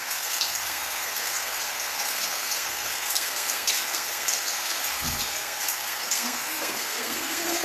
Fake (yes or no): yes